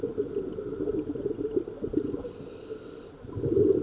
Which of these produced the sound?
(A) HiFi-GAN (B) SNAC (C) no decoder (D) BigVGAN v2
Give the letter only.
C